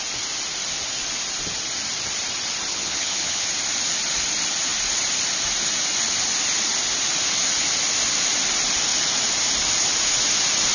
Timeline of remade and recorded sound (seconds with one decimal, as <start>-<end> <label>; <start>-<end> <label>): 0.0-2.7 recorded; 2.7-3.4 remade; 3.4-10.7 recorded